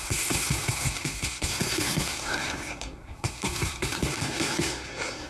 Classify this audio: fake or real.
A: fake